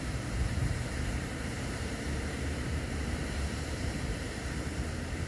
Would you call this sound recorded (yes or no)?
no